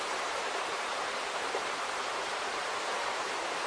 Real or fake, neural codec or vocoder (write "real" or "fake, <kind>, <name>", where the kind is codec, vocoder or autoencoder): fake, vocoder, BigVGAN v2